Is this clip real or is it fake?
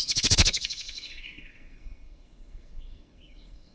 fake